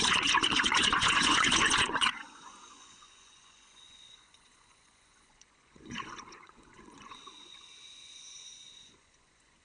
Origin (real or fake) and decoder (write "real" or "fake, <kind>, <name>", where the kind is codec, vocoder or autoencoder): fake, vocoder, Vocos